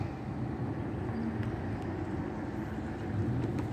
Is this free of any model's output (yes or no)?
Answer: yes